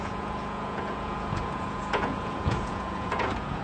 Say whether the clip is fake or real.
fake